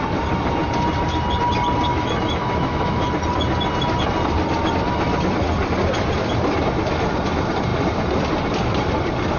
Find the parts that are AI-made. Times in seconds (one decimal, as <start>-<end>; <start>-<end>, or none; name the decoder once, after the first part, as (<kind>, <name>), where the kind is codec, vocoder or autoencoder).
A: 1.9-3.1 (autoencoder, DAC-VAE)